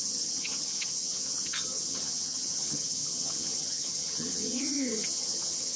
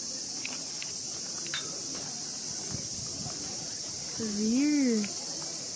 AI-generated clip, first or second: first